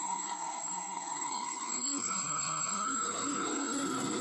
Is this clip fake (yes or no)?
yes